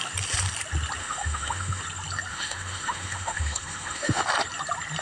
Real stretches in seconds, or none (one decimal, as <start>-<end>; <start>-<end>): 0.0-1.0; 1.8-2.3; 4.2-5.0